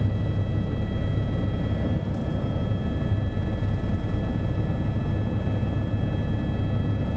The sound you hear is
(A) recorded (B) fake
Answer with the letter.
A